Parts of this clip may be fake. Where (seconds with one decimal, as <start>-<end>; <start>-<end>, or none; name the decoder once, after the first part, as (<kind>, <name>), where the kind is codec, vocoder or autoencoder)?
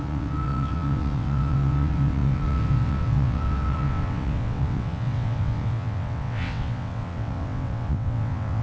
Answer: 0.0-8.6 (vocoder, WaveNeXt)